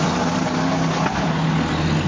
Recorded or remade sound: recorded